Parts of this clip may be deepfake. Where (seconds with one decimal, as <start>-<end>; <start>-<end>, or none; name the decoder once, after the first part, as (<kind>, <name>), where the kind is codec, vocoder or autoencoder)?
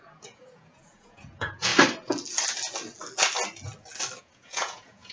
0.0-1.7 (vocoder, Vocos); 4.2-5.1